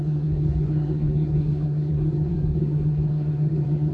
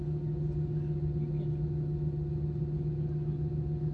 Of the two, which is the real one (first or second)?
second